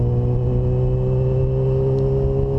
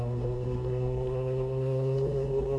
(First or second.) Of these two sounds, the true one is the first